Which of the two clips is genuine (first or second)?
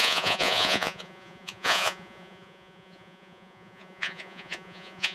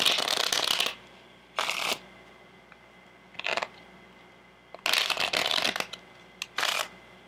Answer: second